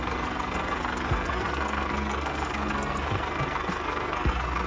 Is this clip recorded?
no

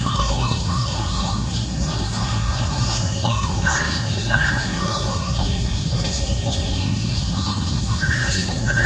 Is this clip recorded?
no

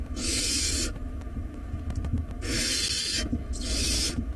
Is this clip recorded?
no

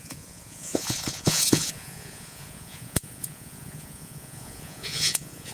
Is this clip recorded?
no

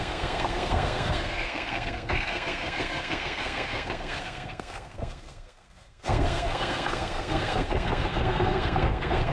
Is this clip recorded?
no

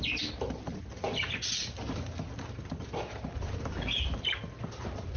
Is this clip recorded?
yes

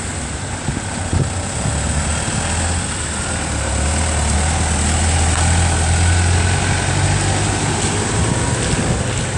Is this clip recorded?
yes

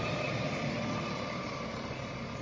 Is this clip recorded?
yes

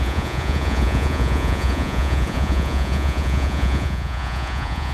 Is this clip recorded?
no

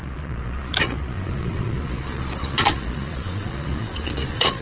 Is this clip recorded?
no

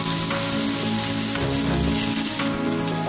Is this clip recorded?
yes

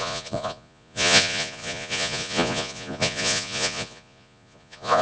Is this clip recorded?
no